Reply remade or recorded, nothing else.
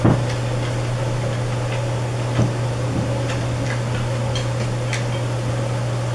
recorded